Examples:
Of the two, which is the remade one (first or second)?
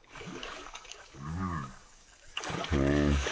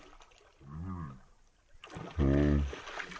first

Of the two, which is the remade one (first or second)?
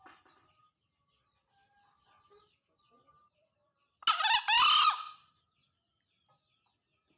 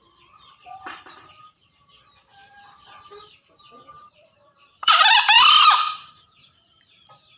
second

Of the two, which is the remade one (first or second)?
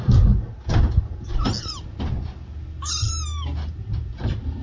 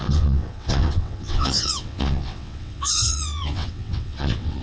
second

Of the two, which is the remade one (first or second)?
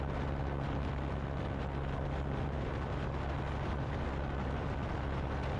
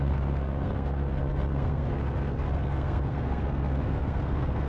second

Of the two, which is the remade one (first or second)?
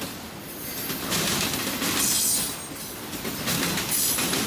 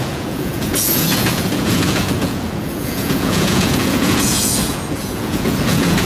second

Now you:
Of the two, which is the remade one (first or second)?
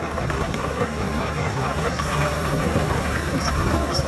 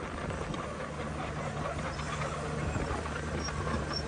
first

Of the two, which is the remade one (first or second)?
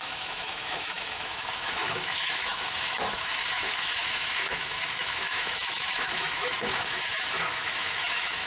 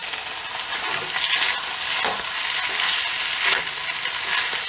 first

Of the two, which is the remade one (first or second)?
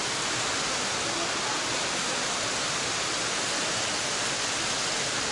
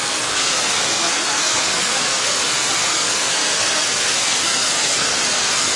second